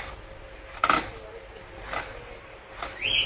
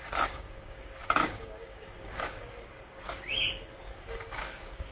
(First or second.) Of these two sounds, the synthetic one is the second